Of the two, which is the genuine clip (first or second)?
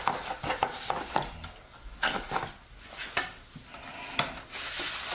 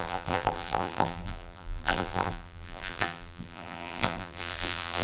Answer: first